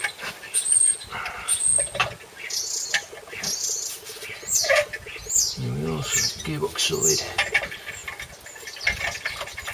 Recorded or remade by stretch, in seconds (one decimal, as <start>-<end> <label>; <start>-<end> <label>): 0.0-9.7 recorded